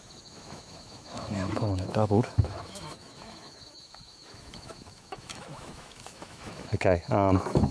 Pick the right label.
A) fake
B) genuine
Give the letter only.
A